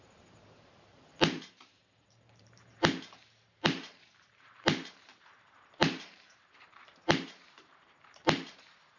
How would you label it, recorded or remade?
remade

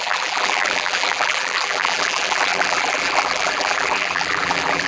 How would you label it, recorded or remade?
remade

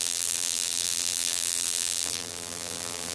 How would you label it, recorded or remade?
remade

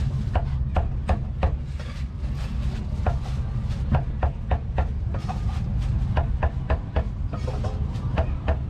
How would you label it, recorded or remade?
recorded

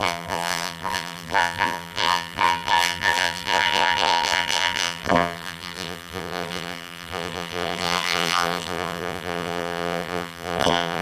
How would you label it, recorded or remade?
remade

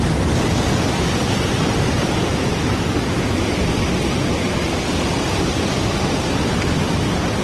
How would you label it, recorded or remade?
recorded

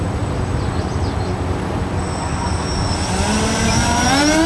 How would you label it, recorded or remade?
recorded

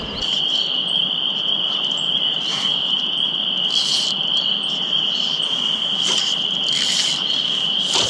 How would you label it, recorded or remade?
remade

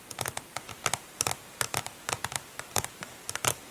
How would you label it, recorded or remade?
remade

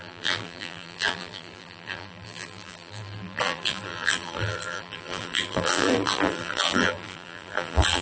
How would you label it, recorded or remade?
remade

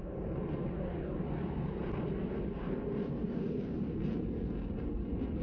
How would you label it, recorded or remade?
recorded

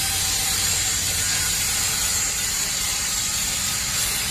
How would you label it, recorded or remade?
remade